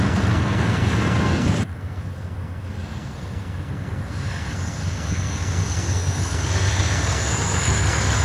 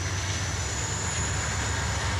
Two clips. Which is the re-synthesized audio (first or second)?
first